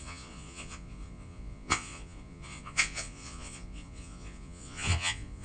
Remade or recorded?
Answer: remade